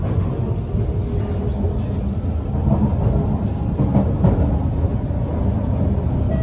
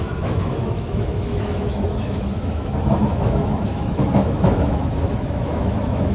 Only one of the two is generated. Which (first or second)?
second